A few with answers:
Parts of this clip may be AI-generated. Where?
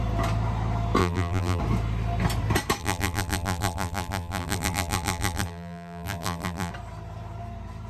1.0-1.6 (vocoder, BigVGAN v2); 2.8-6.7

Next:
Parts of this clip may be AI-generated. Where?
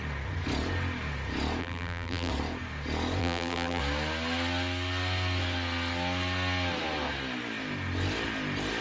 1.6-2.3 (vocoder, BigVGAN v2); 3.2-3.8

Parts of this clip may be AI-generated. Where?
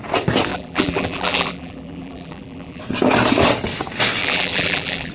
0.5-2.8 (vocoder, BigVGAN v2); 4.2-5.1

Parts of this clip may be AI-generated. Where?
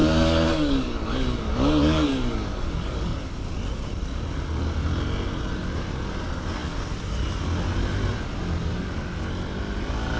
0.0-3.3 (codec, DAC)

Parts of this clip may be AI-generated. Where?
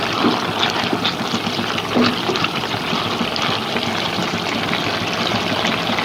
none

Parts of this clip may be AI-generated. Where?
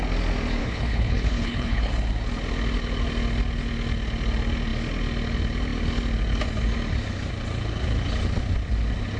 0.6-1.9 (codec, HILCodec)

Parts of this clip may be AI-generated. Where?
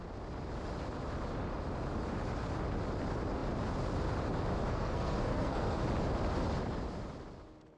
4.7-5.8 (codec, SNAC)